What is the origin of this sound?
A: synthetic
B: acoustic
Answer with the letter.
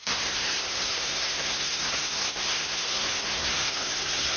A